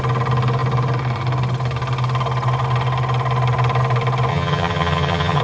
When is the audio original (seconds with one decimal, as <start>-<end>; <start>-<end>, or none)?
0.0-4.3